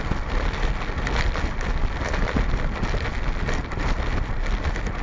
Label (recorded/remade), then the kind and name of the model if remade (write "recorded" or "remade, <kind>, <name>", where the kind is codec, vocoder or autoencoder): recorded